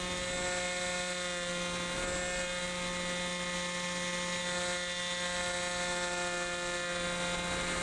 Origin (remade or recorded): recorded